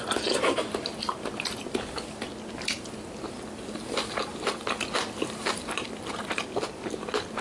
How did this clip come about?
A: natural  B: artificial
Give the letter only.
A